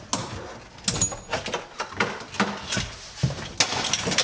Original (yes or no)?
yes